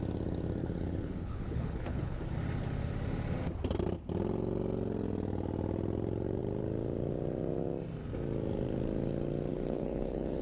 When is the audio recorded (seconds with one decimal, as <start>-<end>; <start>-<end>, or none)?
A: 0.0-0.6; 2.2-9.5

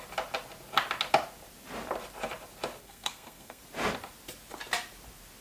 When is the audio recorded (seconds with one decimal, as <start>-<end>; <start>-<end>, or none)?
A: 0.0-2.8; 3.6-5.4

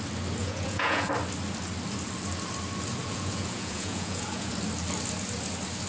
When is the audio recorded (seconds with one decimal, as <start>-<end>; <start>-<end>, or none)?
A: 0.0-0.4; 1.1-3.0; 4.5-5.9

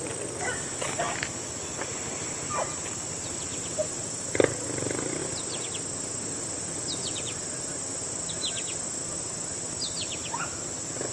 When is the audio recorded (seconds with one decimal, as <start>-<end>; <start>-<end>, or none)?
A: 0.0-11.1

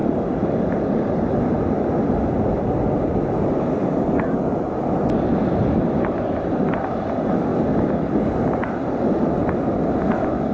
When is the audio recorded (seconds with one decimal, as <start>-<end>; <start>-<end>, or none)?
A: 0.0-10.5

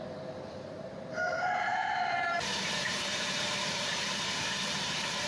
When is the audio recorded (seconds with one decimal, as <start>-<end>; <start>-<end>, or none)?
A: 0.0-1.7

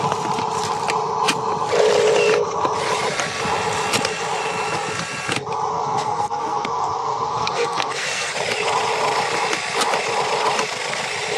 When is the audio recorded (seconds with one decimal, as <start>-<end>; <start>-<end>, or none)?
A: 0.0-5.7; 8.3-11.4